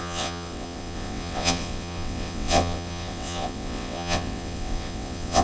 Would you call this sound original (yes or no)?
no